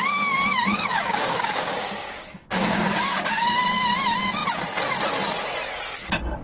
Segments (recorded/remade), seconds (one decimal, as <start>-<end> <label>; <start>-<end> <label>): 0.0-0.5 recorded; 0.5-3.6 remade; 3.6-6.4 recorded